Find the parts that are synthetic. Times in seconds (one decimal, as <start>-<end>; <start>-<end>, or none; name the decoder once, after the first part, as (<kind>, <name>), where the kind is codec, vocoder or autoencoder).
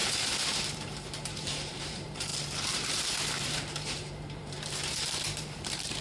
0.6-6.0 (vocoder, BigVGAN v2)